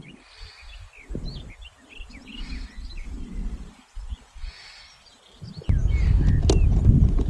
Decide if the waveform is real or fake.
real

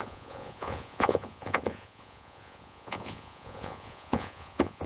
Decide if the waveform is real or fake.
fake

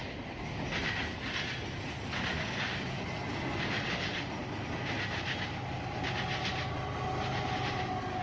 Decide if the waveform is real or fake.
real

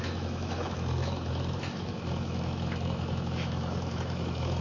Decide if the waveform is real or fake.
fake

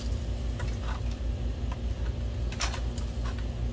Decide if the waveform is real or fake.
real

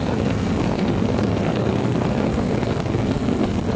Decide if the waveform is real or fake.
fake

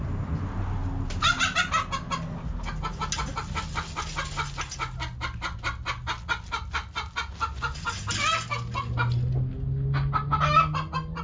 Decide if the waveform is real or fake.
real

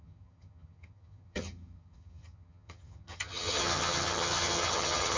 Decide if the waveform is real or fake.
fake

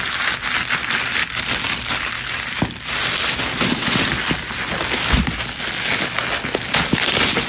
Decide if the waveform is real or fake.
real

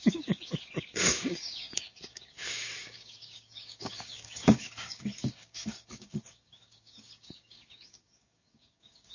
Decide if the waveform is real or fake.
fake